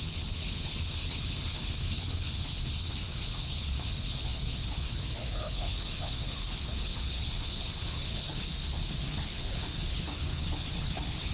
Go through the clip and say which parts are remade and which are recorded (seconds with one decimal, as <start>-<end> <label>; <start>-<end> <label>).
0.0-11.3 remade